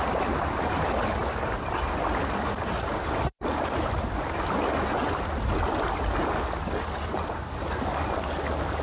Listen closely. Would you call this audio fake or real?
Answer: real